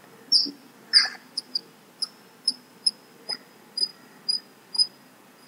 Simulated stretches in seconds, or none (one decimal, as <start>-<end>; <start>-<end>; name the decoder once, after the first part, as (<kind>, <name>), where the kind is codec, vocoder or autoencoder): none